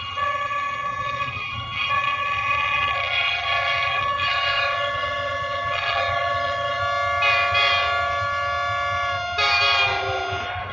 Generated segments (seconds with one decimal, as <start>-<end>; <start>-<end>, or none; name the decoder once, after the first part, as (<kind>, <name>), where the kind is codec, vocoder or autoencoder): 0.0-6.8 (vocoder, HiFi-GAN)